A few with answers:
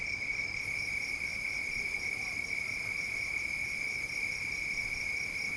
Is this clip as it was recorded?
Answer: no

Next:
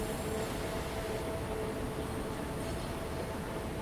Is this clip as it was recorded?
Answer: yes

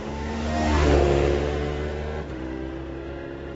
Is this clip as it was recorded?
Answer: no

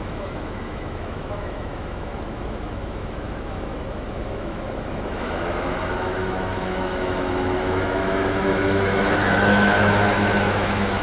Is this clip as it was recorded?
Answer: no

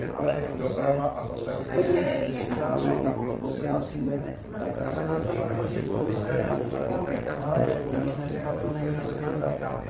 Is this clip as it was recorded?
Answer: no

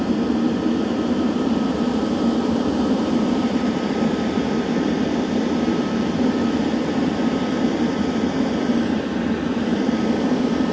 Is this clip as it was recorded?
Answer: no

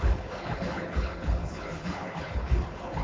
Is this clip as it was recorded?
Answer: no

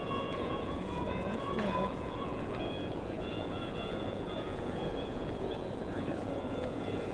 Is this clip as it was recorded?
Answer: no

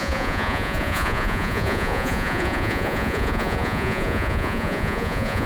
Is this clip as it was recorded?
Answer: no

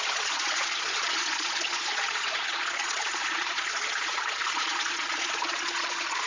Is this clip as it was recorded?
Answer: no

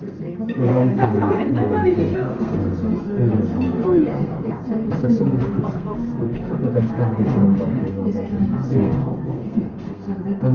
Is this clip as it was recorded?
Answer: no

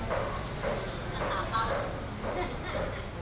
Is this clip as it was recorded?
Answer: yes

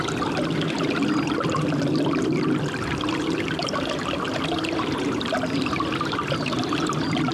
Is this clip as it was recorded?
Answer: yes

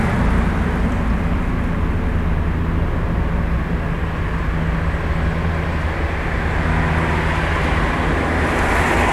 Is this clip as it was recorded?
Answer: yes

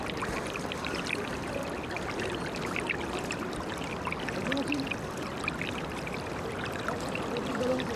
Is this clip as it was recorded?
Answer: yes